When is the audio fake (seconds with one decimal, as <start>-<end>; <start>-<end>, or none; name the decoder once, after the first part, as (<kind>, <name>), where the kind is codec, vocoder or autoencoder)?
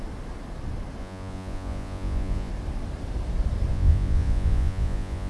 1.0-2.5 (vocoder, Vocos); 3.7-5.3